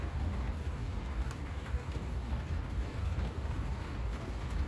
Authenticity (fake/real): fake